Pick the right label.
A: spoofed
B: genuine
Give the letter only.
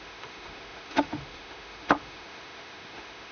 A